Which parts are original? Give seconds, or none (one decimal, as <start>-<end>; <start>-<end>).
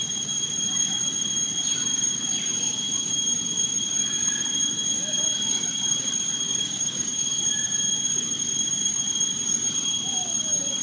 0.0-6.5; 7.1-10.8